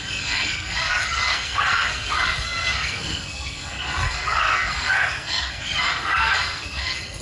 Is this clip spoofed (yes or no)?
yes